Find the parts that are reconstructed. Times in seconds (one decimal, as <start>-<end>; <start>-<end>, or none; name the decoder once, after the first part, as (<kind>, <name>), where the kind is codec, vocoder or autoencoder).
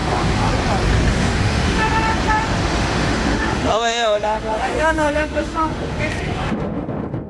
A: 0.0-0.5 (autoencoder, DAC-VAE); 1.1-1.8; 2.6-7.3